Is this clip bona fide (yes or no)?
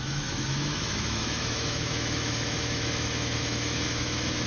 no